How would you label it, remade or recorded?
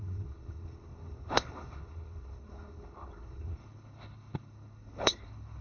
remade